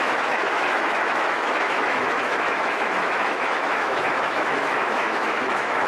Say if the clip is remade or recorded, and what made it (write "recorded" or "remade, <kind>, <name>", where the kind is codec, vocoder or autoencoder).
remade, autoencoder, DAC-VAE